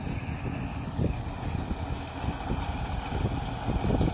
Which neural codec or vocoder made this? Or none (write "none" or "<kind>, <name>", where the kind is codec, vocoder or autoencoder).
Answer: none